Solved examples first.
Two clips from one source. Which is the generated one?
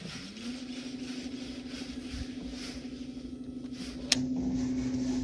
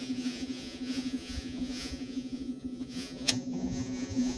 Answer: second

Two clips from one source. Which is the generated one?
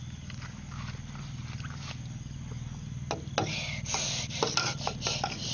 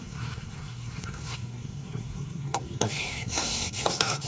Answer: second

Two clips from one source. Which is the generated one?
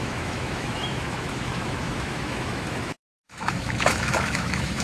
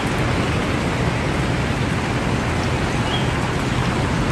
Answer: first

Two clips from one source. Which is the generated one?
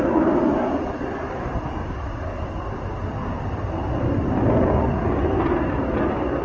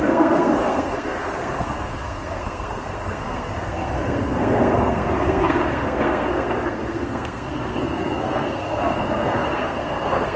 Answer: second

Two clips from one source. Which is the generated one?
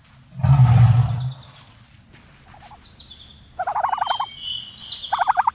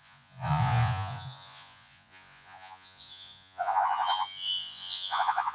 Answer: second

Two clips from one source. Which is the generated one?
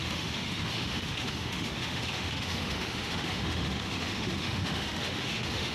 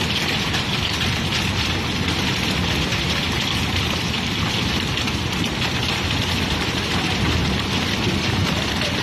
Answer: first